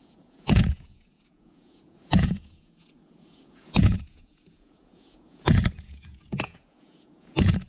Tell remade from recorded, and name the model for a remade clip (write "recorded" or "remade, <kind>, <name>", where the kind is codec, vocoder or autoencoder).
remade, vocoder, Vocos